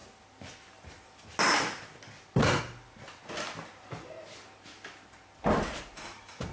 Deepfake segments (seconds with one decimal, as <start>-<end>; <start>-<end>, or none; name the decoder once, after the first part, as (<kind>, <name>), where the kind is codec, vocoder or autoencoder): none